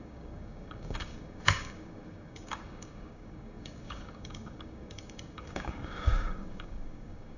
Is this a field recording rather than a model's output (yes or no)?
no